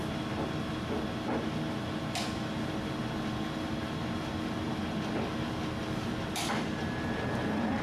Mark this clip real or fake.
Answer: real